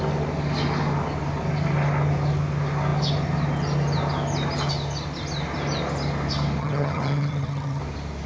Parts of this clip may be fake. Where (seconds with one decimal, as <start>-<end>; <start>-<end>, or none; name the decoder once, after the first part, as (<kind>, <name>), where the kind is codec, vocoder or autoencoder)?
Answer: 6.6-7.8 (vocoder, HiFi-GAN)

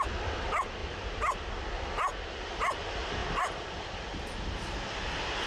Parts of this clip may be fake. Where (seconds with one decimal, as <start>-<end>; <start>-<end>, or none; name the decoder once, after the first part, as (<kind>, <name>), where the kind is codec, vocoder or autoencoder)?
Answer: 0.8-1.5 (vocoder, BigVGAN v2); 3.2-4.0

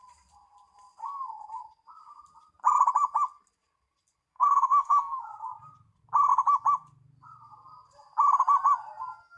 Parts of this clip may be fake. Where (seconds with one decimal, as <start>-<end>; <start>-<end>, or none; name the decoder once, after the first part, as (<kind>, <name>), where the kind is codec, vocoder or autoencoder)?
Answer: 4.3-5.2 (codec, SNAC)

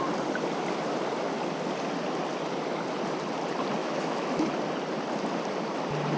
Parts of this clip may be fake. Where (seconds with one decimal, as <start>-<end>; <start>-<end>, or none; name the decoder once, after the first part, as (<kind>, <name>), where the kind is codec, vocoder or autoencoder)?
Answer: 3.8-4.5 (autoencoder, DAC-VAE)

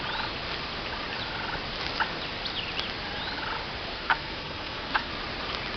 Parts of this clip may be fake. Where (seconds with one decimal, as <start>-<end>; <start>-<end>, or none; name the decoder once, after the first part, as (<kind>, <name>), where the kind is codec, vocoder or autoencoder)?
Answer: 3.9-5.1 (codec, SNAC)